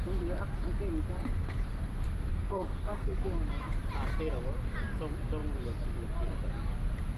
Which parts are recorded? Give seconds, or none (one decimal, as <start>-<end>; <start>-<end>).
0.0-2.3; 3.2-7.2